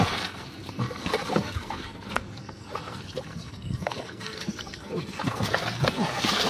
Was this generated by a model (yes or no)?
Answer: yes